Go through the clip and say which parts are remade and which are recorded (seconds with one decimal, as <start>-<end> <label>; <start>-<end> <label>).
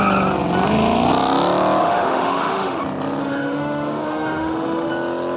0.0-1.8 recorded; 1.8-2.8 remade; 2.8-3.2 recorded; 3.2-4.9 remade; 4.9-5.4 recorded